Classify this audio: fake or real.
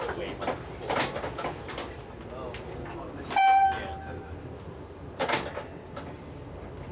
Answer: real